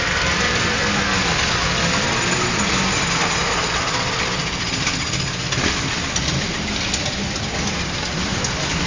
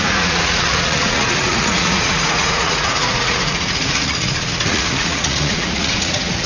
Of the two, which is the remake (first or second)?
second